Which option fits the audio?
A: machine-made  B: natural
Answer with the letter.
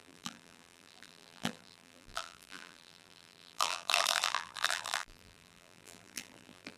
A